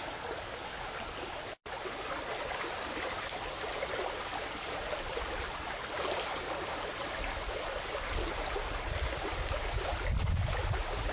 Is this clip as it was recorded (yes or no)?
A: yes